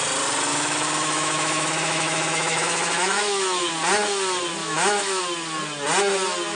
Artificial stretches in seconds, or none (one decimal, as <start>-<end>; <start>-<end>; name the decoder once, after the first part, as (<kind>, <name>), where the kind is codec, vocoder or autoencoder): 0.5-3.7 (autoencoder, DAC-VAE); 4.6-5.2